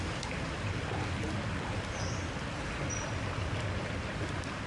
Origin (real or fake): real